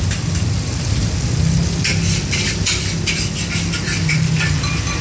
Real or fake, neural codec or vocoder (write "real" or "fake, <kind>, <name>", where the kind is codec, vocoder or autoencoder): real